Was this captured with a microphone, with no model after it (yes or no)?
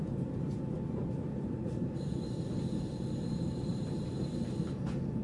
no